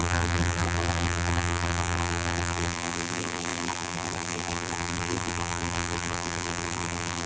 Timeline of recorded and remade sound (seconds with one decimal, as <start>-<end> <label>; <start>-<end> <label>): 0.0-7.3 remade